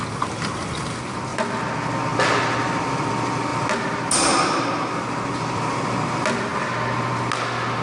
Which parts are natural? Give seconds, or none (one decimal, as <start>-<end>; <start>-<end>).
0.0-7.8